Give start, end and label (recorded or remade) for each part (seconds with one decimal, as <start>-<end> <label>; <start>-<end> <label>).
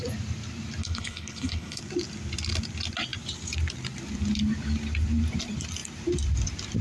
0.0-0.8 recorded; 0.8-1.8 remade; 1.8-6.8 recorded